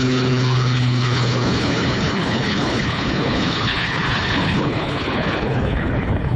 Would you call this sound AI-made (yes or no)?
yes